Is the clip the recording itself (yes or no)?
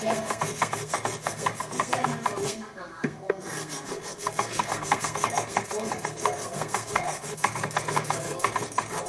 no